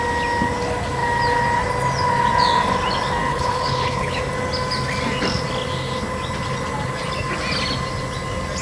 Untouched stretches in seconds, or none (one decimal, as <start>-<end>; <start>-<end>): 0.0-3.3; 4.2-8.6